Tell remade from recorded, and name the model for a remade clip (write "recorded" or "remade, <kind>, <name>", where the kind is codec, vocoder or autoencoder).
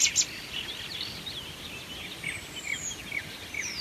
recorded